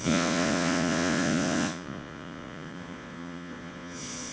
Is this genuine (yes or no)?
no